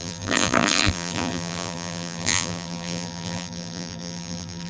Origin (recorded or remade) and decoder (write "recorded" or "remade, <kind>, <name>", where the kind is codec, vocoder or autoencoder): remade, vocoder, BigVGAN v2